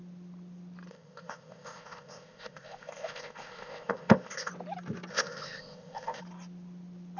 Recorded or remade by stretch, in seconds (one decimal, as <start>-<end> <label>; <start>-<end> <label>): 0.0-0.9 recorded; 0.9-4.5 remade; 4.5-5.1 recorded; 5.1-6.2 remade; 6.2-7.2 recorded